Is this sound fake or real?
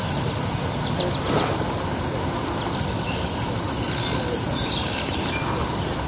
real